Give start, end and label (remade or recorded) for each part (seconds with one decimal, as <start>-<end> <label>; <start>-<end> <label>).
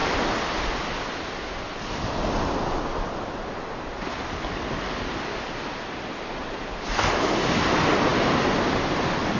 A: 0.0-9.4 recorded